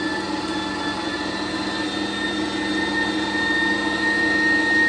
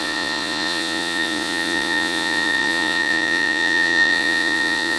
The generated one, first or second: second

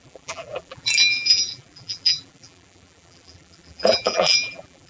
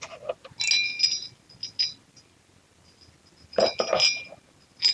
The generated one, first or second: first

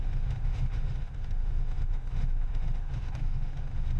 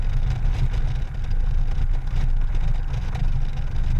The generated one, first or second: first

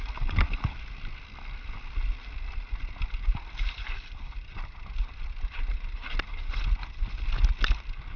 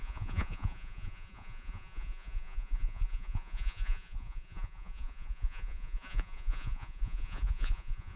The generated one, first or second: second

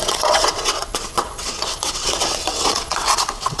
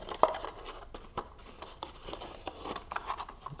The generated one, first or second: first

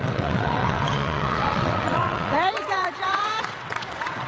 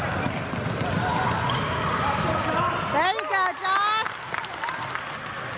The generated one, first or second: first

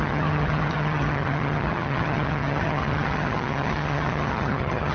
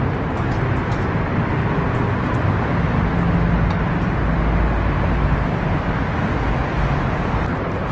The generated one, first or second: first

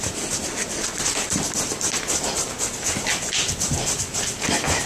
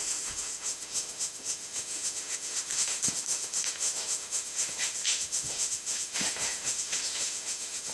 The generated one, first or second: second